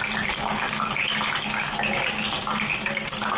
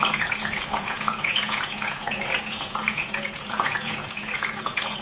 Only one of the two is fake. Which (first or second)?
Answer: second